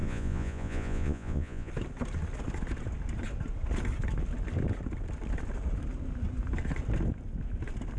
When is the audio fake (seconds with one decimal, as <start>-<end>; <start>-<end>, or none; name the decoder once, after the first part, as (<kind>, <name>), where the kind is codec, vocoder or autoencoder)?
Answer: 0.0-1.7 (vocoder, Vocos)